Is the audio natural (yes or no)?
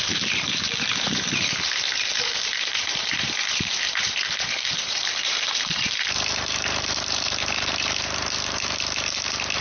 no